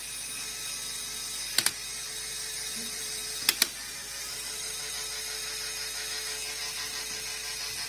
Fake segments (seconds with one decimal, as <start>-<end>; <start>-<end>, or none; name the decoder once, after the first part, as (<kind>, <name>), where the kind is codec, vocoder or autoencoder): 2.7-4.9 (vocoder, BigVGAN v2)